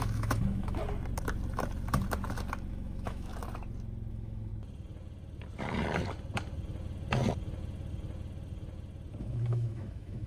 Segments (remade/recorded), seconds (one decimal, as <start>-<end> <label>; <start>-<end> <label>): 0.0-0.8 remade; 0.8-2.7 recorded; 2.7-3.3 remade; 3.3-4.1 recorded; 4.1-4.5 remade; 4.5-9.2 recorded; 9.2-10.3 remade